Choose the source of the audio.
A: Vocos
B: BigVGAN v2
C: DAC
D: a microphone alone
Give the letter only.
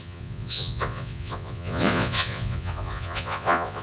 A